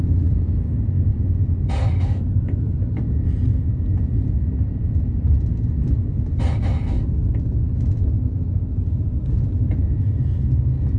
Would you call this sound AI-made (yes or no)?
no